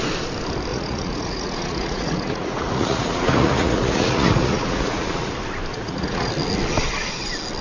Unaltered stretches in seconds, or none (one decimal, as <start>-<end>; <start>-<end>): 0.0-0.7; 5.3-5.7; 6.3-7.6